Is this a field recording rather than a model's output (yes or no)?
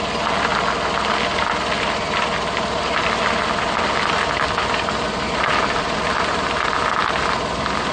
yes